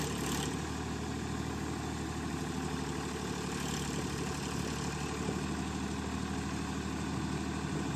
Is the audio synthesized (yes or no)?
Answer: no